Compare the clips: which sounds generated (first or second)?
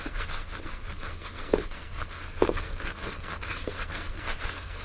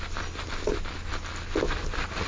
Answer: first